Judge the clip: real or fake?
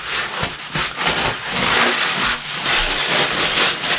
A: real